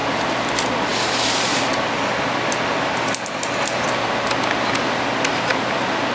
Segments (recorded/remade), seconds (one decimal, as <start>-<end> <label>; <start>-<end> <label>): 0.0-6.1 recorded